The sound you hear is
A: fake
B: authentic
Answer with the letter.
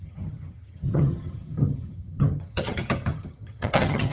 A